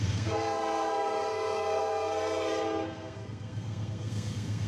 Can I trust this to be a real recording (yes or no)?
no